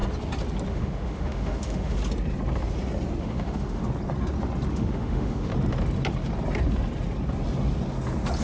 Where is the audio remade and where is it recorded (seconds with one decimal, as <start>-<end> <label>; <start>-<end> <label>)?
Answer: 0.0-0.7 recorded; 0.7-2.0 remade; 2.0-3.2 recorded; 3.2-3.8 remade; 3.8-4.7 recorded; 4.7-5.5 remade; 5.5-8.4 recorded